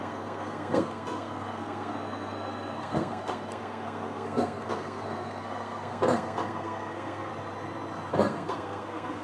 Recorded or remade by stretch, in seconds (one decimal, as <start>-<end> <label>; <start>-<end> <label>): 0.0-7.3 remade; 7.3-8.1 recorded; 8.1-9.2 remade